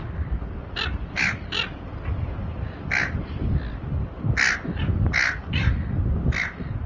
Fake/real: real